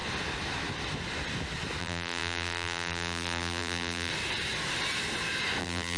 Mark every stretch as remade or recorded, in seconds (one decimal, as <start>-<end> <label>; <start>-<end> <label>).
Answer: 0.0-1.8 recorded; 1.8-4.1 remade; 4.1-5.6 recorded; 5.6-6.0 remade